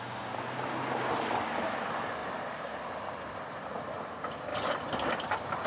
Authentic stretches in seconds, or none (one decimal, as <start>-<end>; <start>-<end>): 0.0-5.7